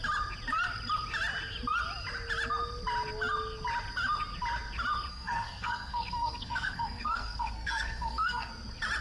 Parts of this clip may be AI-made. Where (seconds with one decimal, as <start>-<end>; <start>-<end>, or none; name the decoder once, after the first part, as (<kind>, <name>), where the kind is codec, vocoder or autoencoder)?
5.1-8.5 (codec, SNAC)